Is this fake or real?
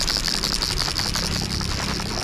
real